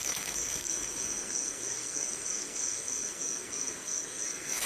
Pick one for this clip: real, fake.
fake